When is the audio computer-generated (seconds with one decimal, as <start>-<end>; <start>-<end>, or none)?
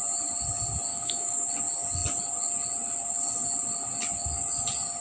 0.9-1.5